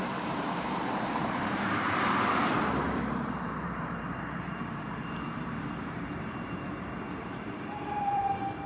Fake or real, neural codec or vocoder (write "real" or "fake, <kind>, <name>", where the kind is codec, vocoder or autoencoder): fake, vocoder, BigVGAN v2